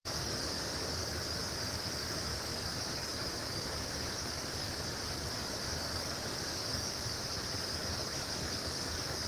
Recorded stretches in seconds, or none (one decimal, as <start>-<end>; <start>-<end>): none